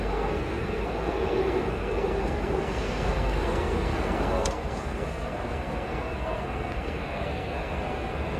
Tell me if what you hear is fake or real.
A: fake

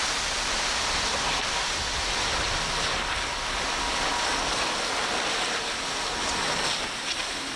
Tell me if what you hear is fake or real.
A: real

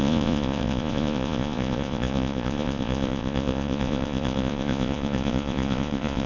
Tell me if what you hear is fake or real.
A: fake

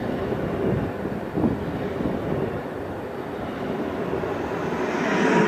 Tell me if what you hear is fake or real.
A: real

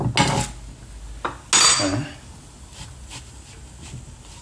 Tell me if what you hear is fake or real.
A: real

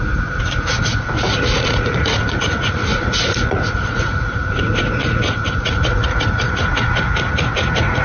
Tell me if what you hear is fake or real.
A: fake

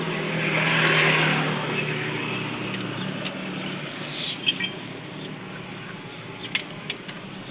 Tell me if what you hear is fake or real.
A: real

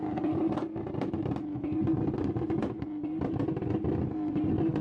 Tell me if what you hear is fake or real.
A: real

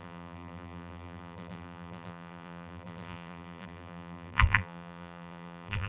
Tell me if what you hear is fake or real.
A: fake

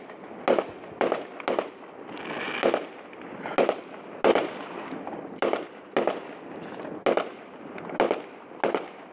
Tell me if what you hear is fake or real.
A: real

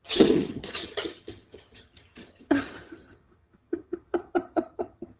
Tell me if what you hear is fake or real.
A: fake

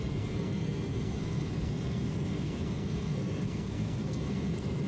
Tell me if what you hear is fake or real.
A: fake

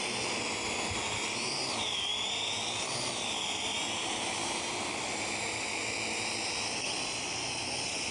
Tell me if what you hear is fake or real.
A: real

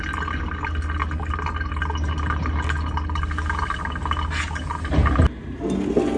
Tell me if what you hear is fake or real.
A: real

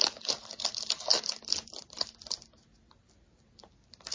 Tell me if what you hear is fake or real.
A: real